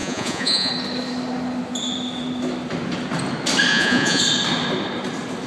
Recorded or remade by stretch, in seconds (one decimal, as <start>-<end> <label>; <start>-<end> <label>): 0.0-0.7 remade; 0.7-3.7 recorded; 3.7-4.2 remade; 4.2-5.5 recorded

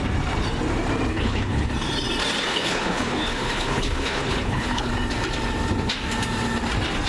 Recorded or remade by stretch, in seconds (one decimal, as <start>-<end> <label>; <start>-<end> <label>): 0.0-1.1 recorded; 1.1-1.7 remade; 1.7-2.5 recorded; 2.5-4.9 remade; 4.9-7.1 recorded

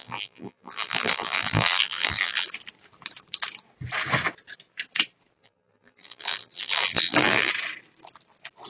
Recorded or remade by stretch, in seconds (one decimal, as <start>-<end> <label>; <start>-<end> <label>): 0.0-2.5 remade; 2.5-5.4 recorded; 5.4-7.5 remade; 7.5-8.7 recorded

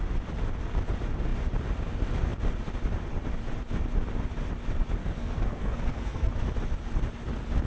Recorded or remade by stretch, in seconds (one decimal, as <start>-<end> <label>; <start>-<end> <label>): 0.0-5.0 recorded; 5.0-6.3 remade; 6.3-7.7 recorded

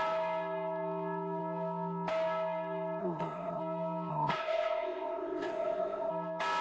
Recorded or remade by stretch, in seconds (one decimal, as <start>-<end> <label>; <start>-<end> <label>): 0.0-3.0 recorded; 3.0-3.6 remade; 3.6-4.1 recorded; 4.1-6.1 remade; 6.1-6.6 recorded

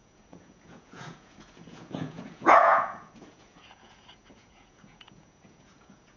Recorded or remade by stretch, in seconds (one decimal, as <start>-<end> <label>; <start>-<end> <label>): 0.0-6.2 remade